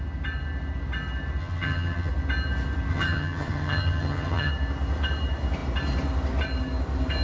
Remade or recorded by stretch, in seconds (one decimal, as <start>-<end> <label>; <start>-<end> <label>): 0.0-1.4 recorded; 1.4-2.1 remade; 2.1-2.9 recorded; 2.9-4.5 remade; 4.5-7.2 recorded